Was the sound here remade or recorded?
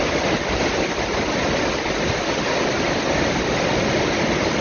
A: recorded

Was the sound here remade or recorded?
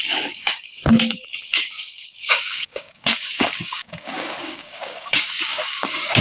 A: remade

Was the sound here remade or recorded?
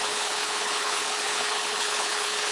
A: remade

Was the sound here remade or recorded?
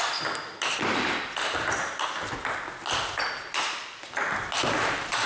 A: recorded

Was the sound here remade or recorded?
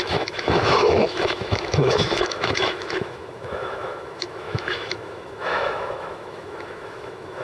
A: remade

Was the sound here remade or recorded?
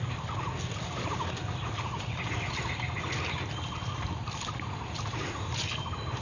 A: recorded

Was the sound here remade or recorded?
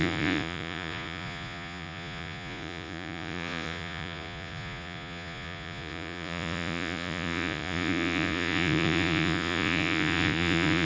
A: remade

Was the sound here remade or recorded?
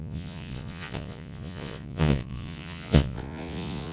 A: remade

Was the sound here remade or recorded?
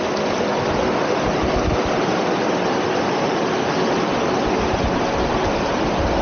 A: recorded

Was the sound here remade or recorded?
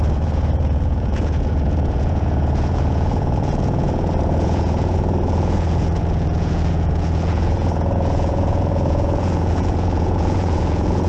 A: remade